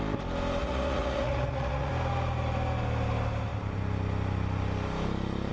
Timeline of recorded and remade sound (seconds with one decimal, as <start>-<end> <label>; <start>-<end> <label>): 0.0-0.6 recorded; 0.6-1.9 remade; 1.9-5.5 recorded